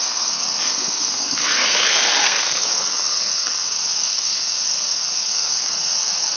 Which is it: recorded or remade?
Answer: remade